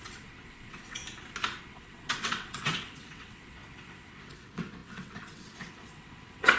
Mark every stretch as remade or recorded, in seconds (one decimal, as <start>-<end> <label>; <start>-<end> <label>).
0.0-1.0 remade; 1.0-1.6 recorded; 1.6-6.6 remade